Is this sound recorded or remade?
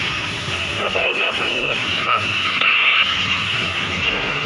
remade